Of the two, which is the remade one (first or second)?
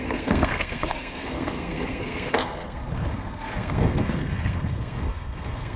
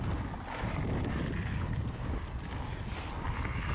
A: first